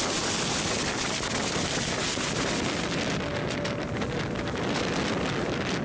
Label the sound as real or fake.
real